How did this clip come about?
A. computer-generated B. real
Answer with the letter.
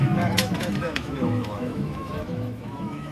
A